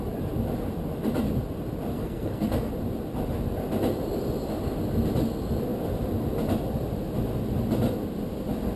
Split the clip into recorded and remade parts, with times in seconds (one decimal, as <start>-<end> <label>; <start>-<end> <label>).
0.0-1.9 recorded; 1.9-2.7 remade; 2.7-8.8 recorded